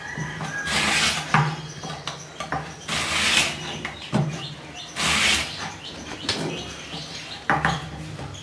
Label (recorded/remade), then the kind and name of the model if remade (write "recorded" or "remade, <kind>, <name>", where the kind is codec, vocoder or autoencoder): recorded